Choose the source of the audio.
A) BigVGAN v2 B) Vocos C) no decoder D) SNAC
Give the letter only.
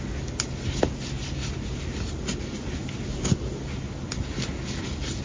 C